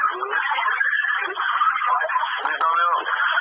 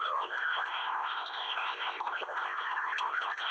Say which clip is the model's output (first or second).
second